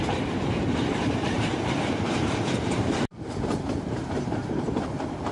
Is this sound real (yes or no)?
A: no